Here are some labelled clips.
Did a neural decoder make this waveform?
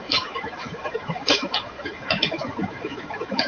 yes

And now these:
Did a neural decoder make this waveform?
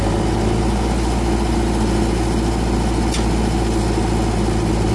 no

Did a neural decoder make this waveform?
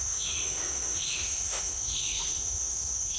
yes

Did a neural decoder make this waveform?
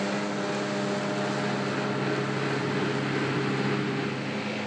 no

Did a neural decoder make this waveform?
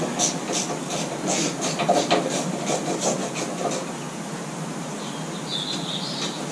no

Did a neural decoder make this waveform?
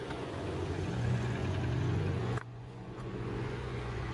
yes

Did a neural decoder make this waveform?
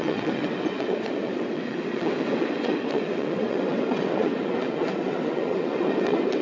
yes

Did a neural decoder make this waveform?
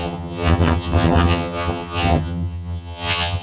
yes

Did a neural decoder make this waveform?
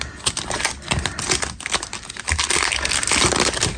no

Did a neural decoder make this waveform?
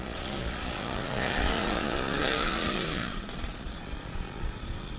yes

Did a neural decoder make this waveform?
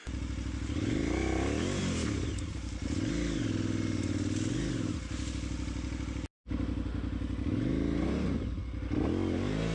no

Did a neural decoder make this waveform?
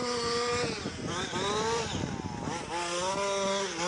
no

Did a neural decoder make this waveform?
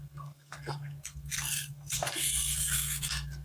yes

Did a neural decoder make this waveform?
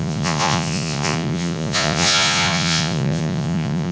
yes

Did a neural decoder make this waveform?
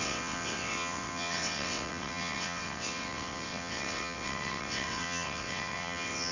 yes